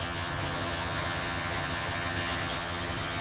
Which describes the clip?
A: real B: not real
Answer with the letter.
B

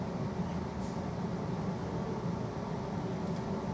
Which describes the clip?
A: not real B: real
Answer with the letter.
B